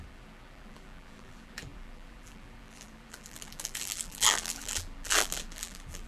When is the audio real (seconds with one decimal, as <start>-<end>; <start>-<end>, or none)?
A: none